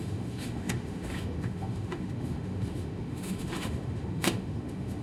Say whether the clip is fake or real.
fake